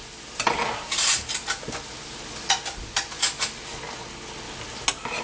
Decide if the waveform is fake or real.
real